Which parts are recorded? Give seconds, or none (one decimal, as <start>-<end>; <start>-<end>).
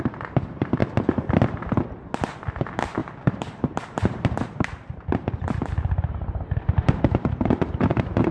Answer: 0.8-2.4